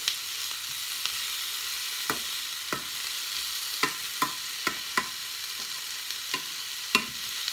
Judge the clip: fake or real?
real